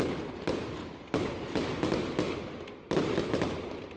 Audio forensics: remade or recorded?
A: recorded